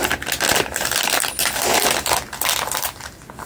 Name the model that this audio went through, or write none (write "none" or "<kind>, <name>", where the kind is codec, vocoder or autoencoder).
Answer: none